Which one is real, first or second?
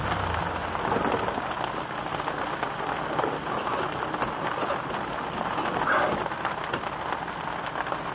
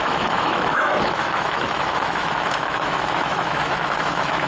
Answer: first